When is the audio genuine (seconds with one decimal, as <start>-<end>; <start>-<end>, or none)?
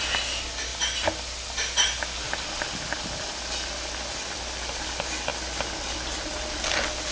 0.0-7.1